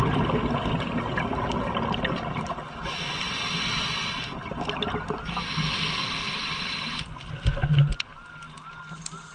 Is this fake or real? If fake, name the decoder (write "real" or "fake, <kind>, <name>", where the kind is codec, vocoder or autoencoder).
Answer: real